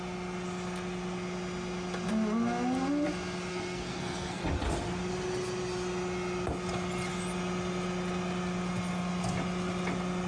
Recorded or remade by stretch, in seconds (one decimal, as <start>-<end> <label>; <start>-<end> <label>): 0.0-3.5 recorded; 3.5-4.4 remade; 4.4-10.3 recorded